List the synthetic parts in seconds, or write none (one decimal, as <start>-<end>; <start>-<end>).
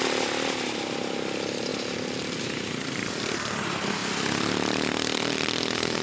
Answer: 0.0-6.0